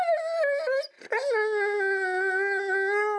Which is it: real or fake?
real